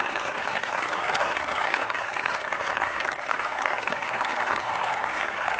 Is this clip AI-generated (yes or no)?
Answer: yes